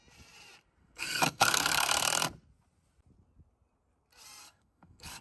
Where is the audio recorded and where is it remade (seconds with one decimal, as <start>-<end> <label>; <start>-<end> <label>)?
0.0-0.8 recorded; 0.8-1.9 remade; 1.9-4.4 recorded; 4.4-5.2 remade